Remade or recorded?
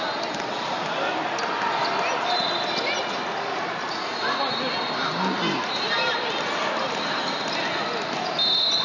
recorded